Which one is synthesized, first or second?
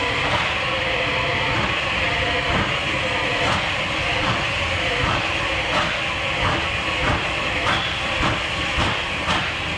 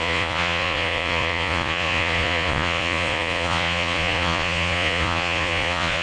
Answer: second